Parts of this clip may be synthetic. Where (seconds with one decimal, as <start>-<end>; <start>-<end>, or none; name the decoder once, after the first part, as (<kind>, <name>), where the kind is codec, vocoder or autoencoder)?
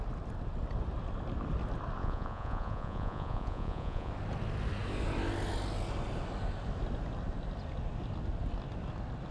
2.0-4.1 (vocoder, Vocos)